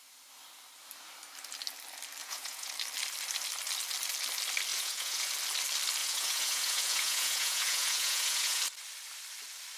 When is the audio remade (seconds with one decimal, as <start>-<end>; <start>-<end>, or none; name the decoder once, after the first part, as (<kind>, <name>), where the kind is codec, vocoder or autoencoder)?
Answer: 2.2-2.7 (vocoder, Vocos); 4.7-5.3; 6.0-8.6